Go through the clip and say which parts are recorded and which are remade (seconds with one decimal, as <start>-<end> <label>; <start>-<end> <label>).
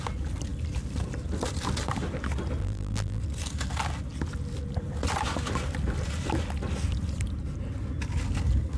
0.0-2.6 recorded; 2.6-3.2 remade; 3.2-8.8 recorded